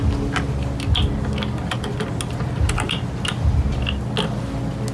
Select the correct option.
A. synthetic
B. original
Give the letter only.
B